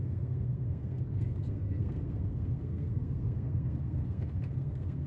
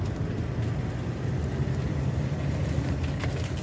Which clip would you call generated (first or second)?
first